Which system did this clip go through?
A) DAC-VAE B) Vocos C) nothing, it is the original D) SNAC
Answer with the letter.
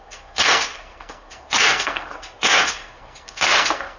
D